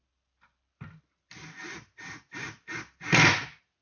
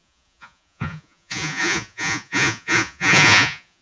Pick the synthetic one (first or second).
second